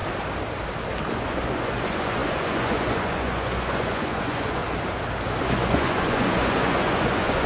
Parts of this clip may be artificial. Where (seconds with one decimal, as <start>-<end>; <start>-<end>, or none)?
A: 1.1-4.6; 5.4-7.5